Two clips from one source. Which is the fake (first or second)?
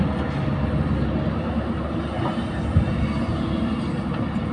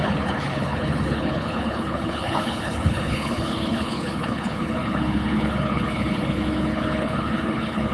second